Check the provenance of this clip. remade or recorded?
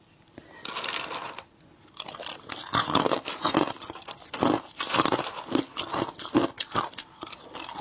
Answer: recorded